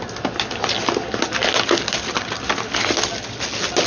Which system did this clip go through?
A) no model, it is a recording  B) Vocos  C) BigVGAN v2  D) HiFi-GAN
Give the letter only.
A